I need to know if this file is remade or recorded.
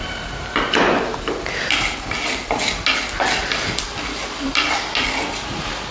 recorded